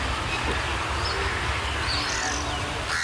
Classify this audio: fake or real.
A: real